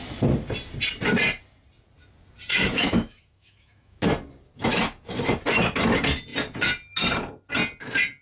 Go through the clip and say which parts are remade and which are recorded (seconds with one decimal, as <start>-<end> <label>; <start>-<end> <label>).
0.0-2.5 recorded; 2.5-4.0 remade; 4.0-8.2 recorded